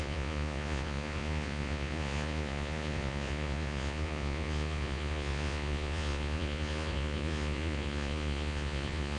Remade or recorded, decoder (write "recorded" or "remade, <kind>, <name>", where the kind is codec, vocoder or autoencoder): remade, vocoder, Vocos